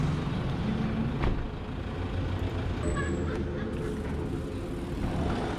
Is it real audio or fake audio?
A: real